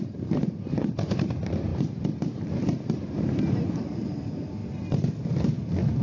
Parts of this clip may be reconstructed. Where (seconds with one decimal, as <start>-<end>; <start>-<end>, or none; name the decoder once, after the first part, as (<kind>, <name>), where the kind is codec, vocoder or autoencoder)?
0.0-4.6 (vocoder, BigVGAN v2)

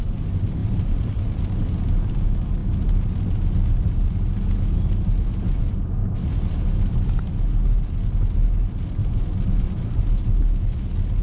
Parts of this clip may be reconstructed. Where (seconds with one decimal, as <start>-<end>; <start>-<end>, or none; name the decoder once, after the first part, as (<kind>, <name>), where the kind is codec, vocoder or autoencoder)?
0.6-1.2 (vocoder, BigVGAN v2); 6.0-6.5; 9.0-10.0

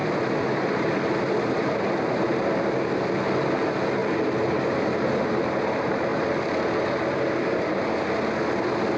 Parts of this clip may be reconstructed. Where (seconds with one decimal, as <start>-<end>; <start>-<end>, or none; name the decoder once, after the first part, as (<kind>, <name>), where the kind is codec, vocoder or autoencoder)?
none

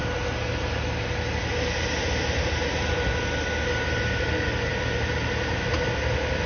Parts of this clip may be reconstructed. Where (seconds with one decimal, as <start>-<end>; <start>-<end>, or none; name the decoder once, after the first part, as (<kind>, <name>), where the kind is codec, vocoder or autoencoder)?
none

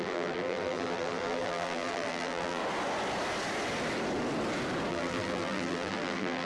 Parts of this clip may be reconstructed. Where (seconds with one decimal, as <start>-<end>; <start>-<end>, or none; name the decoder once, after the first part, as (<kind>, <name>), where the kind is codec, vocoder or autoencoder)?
0.0-2.6 (vocoder, BigVGAN v2); 4.9-6.5

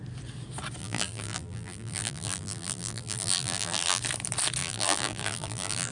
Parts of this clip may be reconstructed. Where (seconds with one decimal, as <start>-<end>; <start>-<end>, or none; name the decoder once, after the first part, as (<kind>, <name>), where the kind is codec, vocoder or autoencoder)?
0.8-4.0 (vocoder, BigVGAN v2); 4.6-5.9

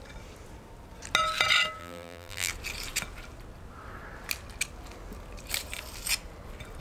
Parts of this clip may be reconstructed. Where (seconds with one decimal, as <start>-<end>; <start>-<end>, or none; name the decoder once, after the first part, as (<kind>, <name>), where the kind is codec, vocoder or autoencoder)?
1.8-2.5 (vocoder, BigVGAN v2)